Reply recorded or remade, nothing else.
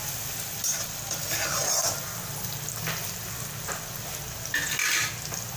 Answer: recorded